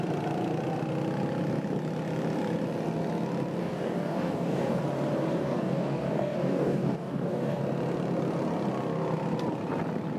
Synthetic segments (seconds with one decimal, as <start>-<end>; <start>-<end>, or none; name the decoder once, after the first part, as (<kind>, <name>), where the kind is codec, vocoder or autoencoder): 3.6-4.8 (codec, DAC); 5.3-7.6